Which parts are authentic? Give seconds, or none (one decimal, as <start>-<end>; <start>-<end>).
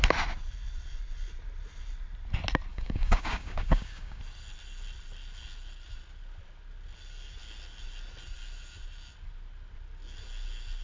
0.0-2.7; 4.2-10.8